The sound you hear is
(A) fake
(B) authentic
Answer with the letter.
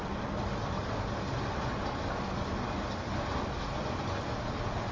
B